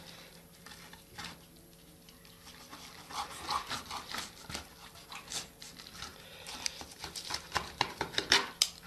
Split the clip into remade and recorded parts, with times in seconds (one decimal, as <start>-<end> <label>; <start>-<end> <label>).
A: 0.0-8.9 recorded